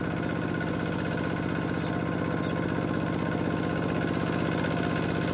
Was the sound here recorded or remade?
recorded